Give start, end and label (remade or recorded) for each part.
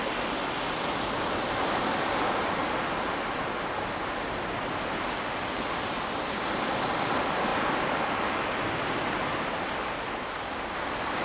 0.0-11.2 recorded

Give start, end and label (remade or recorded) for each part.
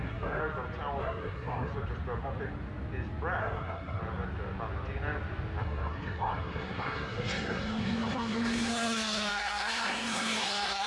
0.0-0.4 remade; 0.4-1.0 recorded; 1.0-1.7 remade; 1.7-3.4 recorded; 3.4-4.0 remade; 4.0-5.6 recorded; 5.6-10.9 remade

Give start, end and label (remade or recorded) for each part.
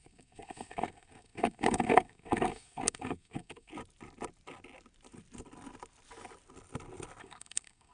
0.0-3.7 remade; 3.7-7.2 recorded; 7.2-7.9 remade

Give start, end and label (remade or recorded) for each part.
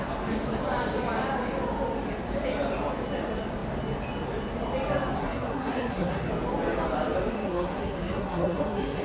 0.0-5.2 recorded; 5.2-6.3 remade; 6.3-7.3 recorded; 7.3-9.0 remade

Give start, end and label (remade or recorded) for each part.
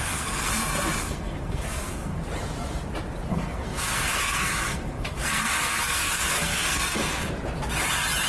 0.0-0.5 remade; 0.5-1.0 recorded; 1.0-2.1 remade; 2.1-3.3 recorded; 3.3-7.0 remade; 7.0-8.3 recorded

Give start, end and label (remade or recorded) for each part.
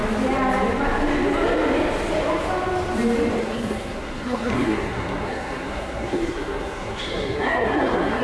0.0-3.4 recorded; 3.4-8.2 remade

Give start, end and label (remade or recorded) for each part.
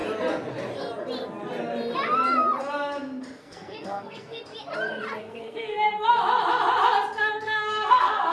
0.0-3.4 recorded; 3.4-4.4 remade; 4.4-5.2 recorded; 5.2-6.2 remade; 6.2-7.2 recorded; 7.2-8.3 remade